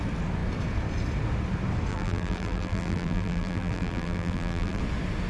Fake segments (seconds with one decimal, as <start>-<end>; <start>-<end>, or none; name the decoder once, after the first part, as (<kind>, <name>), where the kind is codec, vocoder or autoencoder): 1.9-4.8 (vocoder, BigVGAN v2)